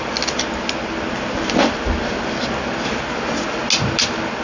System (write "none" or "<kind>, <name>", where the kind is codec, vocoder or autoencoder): none